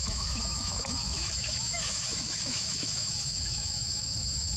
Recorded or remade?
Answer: remade